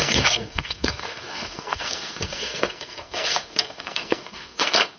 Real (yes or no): no